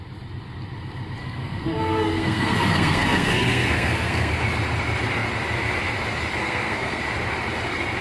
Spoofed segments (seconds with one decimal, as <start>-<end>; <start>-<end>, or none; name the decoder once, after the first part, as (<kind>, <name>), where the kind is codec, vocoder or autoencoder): 1.2-4.3 (codec, SNAC); 6.4-7.0